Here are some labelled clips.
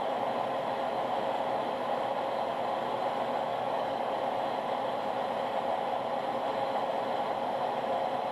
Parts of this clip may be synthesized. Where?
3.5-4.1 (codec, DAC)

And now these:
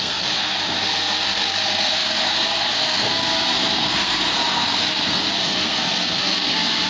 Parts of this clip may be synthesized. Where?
0.0-6.9 (codec, SNAC)

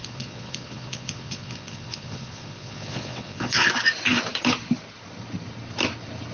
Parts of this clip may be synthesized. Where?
0.0-3.7 (vocoder, Vocos)

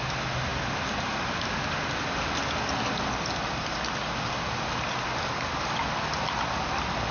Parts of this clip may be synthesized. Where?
none

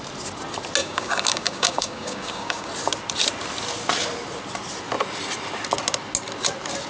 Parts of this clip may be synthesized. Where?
0.8-2.7 (codec, DAC)

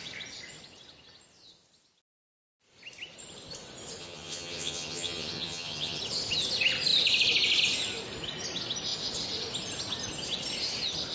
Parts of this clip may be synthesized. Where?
4.0-6.0 (vocoder, HiFi-GAN)